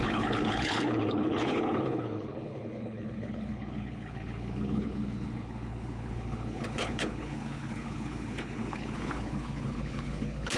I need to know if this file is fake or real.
fake